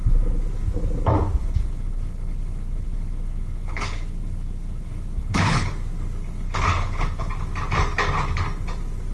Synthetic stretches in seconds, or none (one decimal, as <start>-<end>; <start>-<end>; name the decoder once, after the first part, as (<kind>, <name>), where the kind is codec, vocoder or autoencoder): 1.4-5.7 (codec, HILCodec); 6.2-7.3